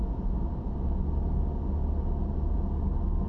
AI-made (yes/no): no